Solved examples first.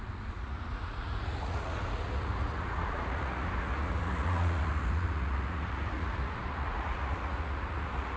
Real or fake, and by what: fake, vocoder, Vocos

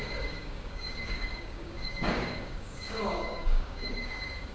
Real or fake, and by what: fake, codec, DAC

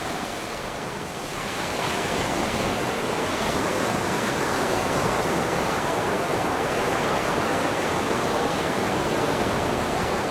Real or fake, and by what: fake, codec, SNAC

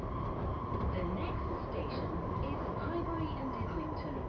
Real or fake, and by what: real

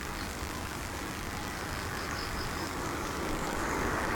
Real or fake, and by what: fake, codec, DAC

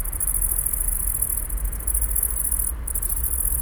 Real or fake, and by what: real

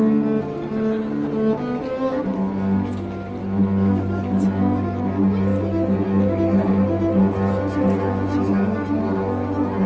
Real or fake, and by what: real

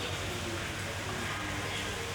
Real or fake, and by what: real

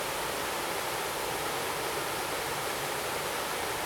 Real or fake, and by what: real